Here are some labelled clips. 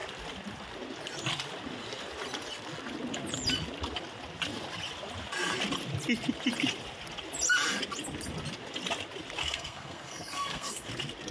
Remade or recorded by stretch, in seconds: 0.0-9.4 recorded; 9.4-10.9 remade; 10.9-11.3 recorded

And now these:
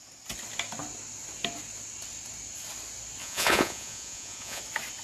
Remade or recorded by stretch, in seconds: 0.0-3.2 recorded; 3.2-4.6 remade; 4.6-5.0 recorded

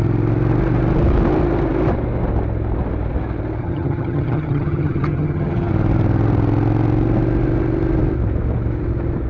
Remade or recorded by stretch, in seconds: 0.0-3.6 recorded; 3.6-5.7 remade; 5.7-9.3 recorded

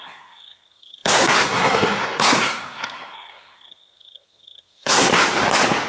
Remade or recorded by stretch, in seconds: 0.0-5.1 remade; 5.1-5.9 recorded

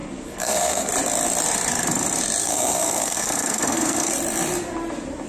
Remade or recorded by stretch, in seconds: 0.0-0.9 remade; 0.9-2.4 recorded; 2.4-4.1 remade; 4.1-5.3 recorded